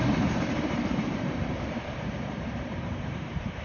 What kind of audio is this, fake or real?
fake